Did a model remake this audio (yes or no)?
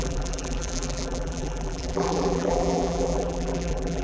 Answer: yes